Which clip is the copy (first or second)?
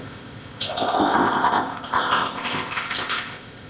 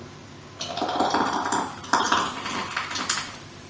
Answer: first